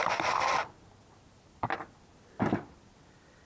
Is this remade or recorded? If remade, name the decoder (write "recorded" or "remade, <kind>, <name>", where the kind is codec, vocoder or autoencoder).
recorded